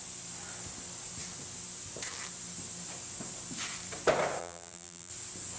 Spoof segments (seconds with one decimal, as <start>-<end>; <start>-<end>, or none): 4.4-5.1